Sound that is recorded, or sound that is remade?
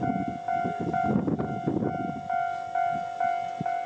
recorded